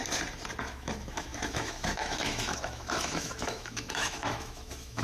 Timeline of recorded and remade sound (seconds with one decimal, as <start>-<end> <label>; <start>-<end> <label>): 0.0-0.6 recorded; 0.6-5.0 remade